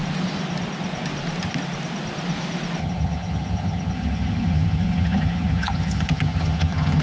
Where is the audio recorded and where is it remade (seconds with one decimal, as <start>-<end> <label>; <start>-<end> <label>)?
0.0-2.8 recorded; 2.8-7.0 remade